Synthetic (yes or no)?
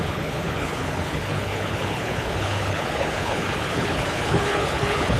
yes